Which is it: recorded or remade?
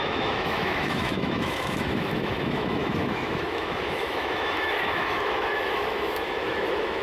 remade